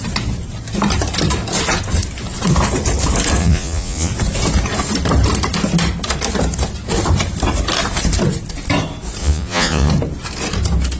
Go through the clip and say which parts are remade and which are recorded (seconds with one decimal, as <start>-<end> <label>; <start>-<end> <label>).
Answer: 0.0-3.4 recorded; 3.4-4.1 remade; 4.1-9.2 recorded; 9.2-9.9 remade; 9.9-11.0 recorded